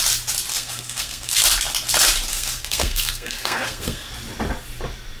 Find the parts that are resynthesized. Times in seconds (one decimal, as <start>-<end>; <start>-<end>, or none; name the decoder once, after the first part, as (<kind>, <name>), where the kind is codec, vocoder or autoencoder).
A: 0.5-1.4 (codec, SNAC); 2.3-4.1